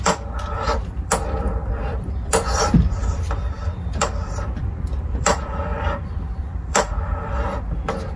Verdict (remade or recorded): remade